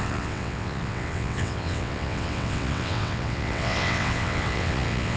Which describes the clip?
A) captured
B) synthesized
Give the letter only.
B